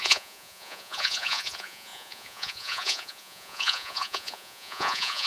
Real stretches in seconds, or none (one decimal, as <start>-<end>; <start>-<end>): none